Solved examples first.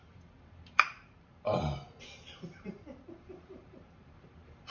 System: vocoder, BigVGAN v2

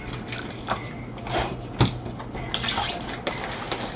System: none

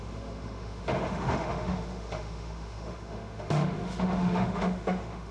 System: autoencoder, DAC-VAE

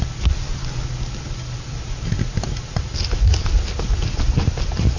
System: none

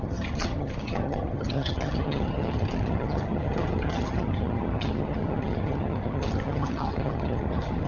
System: vocoder, HiFi-GAN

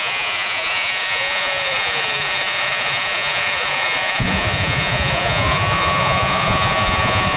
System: vocoder, Vocos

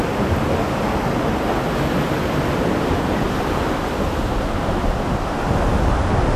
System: none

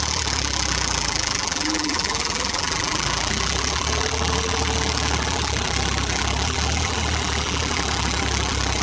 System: vocoder, BigVGAN v2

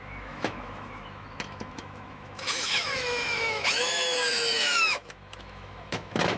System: autoencoder, DAC-VAE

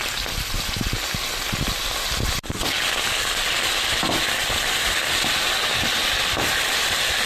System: none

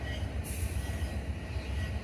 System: none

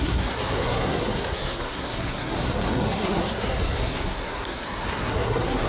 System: codec, SNAC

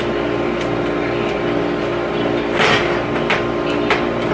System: none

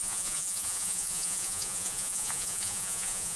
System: vocoder, Vocos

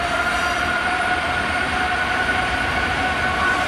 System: vocoder, BigVGAN v2